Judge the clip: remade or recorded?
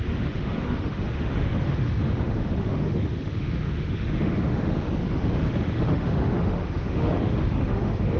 remade